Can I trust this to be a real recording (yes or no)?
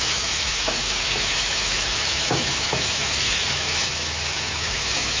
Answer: no